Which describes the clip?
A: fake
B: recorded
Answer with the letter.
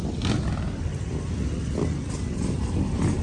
B